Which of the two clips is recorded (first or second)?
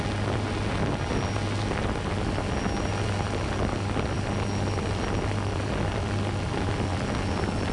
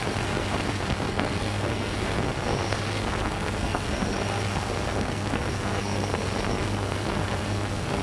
first